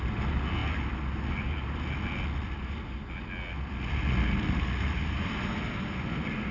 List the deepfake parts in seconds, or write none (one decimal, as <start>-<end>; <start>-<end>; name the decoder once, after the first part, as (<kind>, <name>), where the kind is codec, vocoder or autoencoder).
none